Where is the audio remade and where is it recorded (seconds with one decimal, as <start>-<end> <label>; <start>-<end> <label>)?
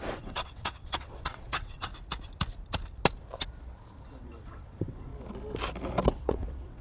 0.0-1.9 remade; 1.9-4.2 recorded; 4.2-5.1 remade; 5.1-6.1 recorded; 6.1-6.8 remade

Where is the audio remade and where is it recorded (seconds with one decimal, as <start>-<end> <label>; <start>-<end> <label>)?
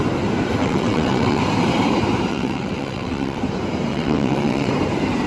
0.0-0.6 recorded; 0.6-1.4 remade; 1.4-2.3 recorded; 2.3-3.4 remade; 3.4-3.9 recorded; 3.9-4.7 remade; 4.7-5.3 recorded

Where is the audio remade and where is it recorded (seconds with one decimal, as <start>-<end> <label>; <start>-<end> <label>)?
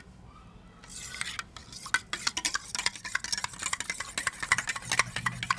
0.0-5.6 recorded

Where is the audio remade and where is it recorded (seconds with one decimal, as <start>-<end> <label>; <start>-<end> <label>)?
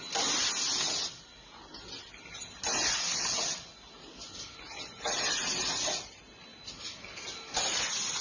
0.0-8.2 recorded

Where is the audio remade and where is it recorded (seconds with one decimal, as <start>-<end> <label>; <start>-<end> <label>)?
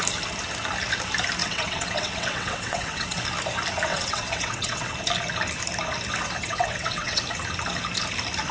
0.0-1.4 recorded; 1.4-3.2 remade; 3.2-3.9 recorded; 3.9-4.9 remade; 4.9-6.4 recorded; 6.4-7.2 remade; 7.2-8.5 recorded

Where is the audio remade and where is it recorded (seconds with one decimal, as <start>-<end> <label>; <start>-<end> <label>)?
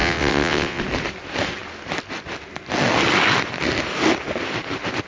0.0-0.8 remade; 0.8-5.1 recorded